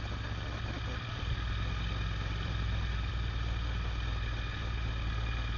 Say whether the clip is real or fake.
real